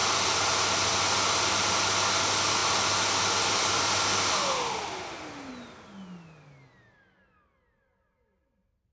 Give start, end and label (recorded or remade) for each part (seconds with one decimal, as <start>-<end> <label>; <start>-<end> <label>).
0.0-8.9 recorded